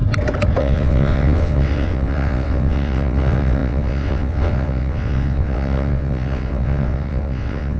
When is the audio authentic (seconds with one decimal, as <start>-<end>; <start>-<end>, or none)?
0.0-0.6